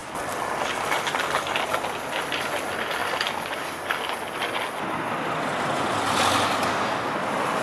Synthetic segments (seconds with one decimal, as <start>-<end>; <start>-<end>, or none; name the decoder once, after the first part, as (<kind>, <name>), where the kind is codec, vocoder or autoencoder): none